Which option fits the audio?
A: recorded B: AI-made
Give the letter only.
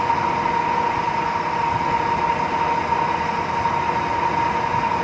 A